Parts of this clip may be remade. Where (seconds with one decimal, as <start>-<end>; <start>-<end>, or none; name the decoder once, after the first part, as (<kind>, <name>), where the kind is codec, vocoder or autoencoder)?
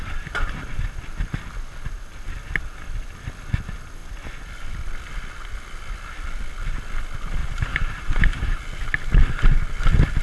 7.4-8.6 (vocoder, BigVGAN v2)